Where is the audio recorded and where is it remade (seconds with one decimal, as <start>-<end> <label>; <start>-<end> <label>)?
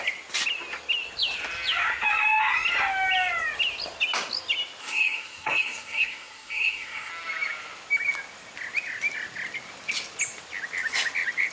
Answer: 0.0-4.8 recorded; 4.8-7.1 remade; 7.1-11.5 recorded